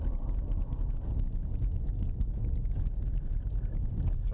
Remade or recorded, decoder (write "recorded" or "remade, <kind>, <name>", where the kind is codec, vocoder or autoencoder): recorded